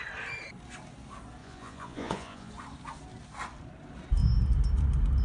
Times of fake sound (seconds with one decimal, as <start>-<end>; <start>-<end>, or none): 1.4-2.5